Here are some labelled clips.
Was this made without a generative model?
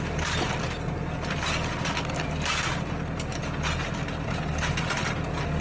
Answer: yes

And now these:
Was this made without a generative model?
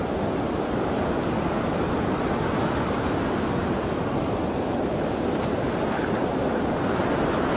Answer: yes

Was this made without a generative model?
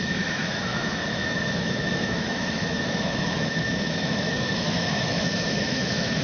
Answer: no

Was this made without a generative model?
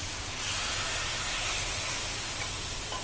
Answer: yes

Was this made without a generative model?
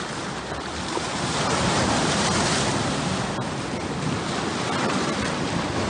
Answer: yes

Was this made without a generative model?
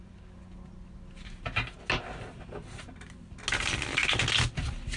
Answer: yes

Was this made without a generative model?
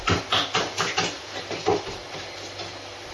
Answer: yes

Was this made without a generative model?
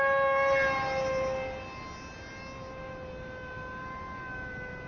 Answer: yes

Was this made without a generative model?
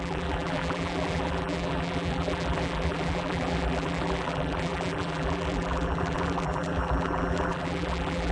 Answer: no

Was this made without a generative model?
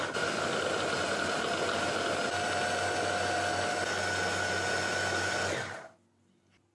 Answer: yes